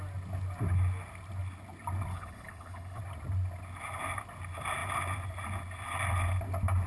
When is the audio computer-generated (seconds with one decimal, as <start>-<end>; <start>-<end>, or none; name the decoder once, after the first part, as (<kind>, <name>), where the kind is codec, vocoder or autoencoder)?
2.1-3.0 (codec, HILCodec)